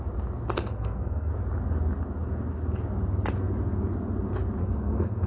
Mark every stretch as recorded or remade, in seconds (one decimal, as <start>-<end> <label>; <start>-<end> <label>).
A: 0.0-0.6 recorded; 0.6-1.3 remade; 1.3-4.6 recorded; 4.6-5.3 remade